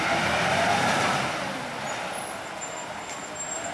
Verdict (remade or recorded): recorded